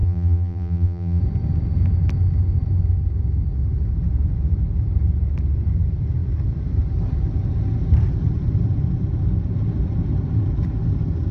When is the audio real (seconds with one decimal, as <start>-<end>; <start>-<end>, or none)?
1.2-11.3